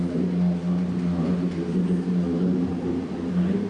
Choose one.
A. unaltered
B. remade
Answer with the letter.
A